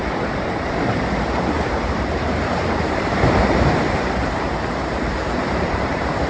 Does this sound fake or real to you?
fake